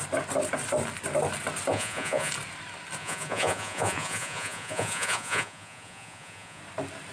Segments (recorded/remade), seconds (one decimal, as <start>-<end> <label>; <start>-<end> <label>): 0.0-1.7 recorded; 1.7-2.3 remade; 2.3-3.0 recorded; 3.0-6.6 remade; 6.6-7.1 recorded